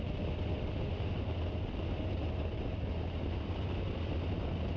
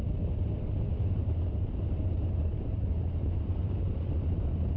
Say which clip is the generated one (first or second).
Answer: second